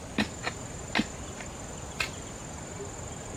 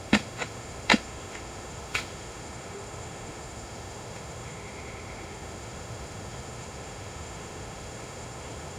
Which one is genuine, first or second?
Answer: first